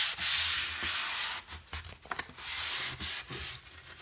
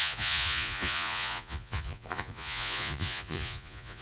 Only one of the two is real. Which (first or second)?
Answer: first